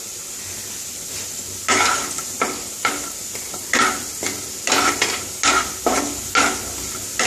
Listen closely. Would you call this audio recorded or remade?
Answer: recorded